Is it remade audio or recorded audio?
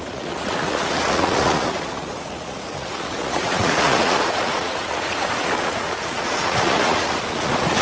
remade